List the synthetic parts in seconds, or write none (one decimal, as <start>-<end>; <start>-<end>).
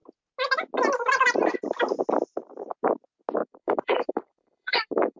3.4-5.2